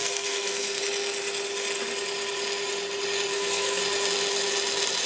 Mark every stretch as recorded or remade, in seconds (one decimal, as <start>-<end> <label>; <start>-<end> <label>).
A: 0.0-0.8 remade; 0.8-3.3 recorded; 3.3-3.8 remade; 3.8-5.1 recorded